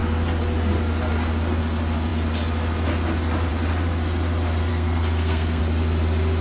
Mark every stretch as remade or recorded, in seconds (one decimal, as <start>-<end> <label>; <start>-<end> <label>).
0.0-4.7 recorded; 4.7-5.6 remade; 5.6-6.4 recorded